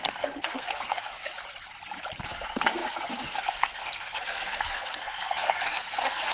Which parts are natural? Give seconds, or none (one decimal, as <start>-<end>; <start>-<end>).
1.3-2.2

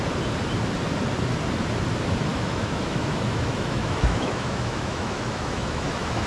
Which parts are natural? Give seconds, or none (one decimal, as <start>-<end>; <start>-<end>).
0.0-2.3

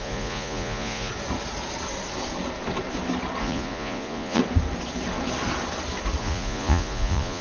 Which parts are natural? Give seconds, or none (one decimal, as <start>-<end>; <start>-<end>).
1.1-3.4; 4.4-6.2